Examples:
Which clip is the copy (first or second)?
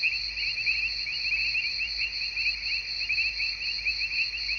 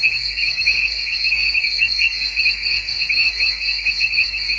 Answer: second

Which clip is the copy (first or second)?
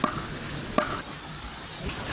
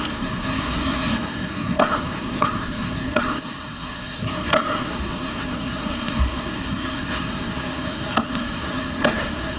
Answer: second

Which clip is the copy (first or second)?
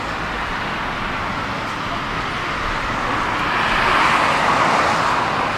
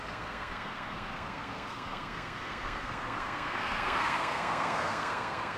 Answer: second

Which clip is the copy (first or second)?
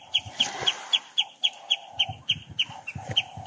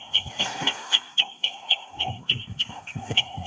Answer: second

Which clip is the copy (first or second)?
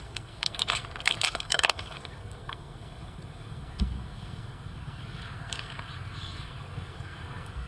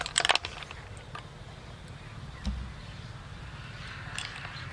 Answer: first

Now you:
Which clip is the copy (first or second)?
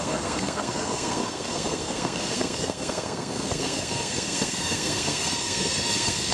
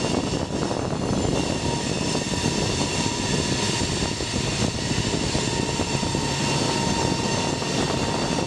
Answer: first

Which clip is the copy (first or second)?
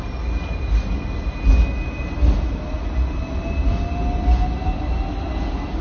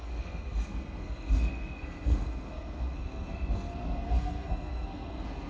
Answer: second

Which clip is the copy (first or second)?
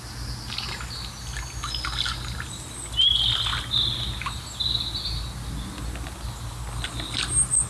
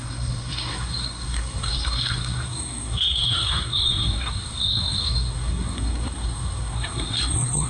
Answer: second